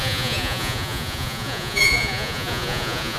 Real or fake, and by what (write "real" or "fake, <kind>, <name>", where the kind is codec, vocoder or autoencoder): fake, vocoder, Vocos